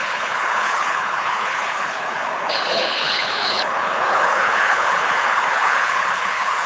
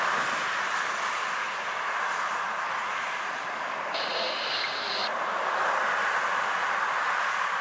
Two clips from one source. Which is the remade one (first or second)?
first